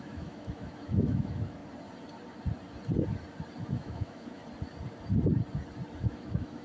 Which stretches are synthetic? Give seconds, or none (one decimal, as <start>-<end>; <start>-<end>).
0.0-1.6; 3.6-4.4; 6.0-6.6

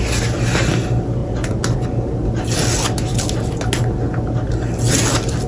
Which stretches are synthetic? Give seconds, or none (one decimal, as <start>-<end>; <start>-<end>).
none

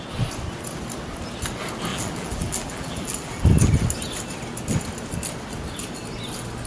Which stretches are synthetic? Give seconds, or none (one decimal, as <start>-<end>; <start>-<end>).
1.9-3.4